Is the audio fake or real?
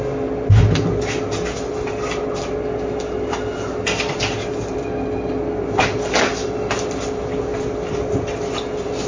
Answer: real